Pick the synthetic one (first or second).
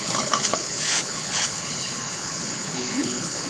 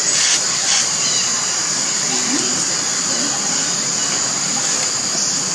first